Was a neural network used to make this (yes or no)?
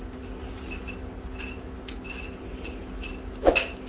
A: no